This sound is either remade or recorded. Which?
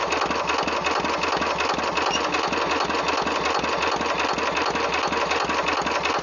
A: recorded